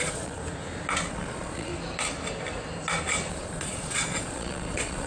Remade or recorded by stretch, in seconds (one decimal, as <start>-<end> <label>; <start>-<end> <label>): 0.0-0.4 remade; 0.4-1.1 recorded; 1.1-1.7 remade; 1.7-3.3 recorded; 3.3-5.1 remade